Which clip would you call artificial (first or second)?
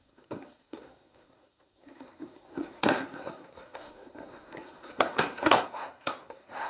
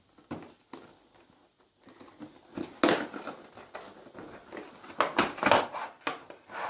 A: first